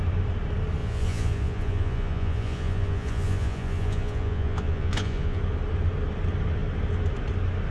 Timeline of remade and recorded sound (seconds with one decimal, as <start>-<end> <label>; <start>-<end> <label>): 0.0-0.8 recorded; 0.8-5.4 remade; 5.4-7.7 recorded